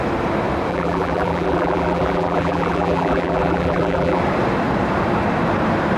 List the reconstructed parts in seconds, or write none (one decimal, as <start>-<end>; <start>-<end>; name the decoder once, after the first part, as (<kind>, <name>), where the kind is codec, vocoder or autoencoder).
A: 0.7-4.2 (vocoder, BigVGAN v2)